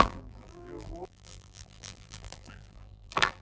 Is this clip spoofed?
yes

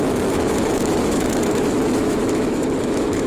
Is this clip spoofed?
yes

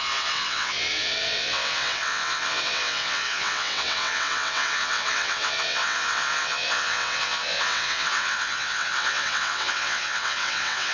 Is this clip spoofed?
yes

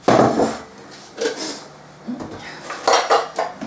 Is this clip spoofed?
no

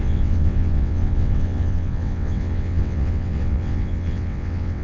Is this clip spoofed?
yes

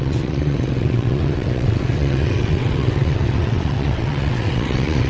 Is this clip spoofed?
yes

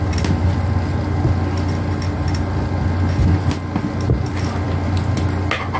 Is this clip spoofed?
no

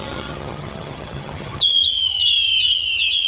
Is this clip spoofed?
yes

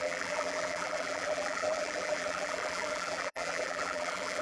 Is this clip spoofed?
yes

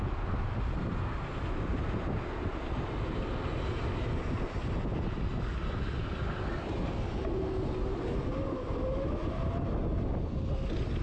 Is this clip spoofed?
no